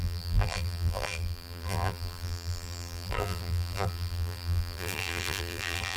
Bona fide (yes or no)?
no